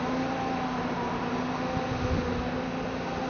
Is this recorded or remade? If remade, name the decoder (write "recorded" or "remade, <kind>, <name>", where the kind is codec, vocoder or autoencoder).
recorded